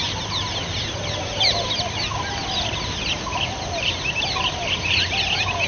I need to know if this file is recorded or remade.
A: recorded